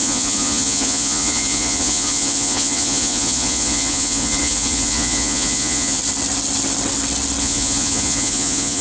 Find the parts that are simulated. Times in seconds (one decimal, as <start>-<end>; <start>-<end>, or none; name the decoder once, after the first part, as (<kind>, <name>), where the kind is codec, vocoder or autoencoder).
0.0-6.0 (vocoder, Vocos); 7.4-8.8